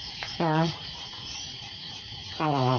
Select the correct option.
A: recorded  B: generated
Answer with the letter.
B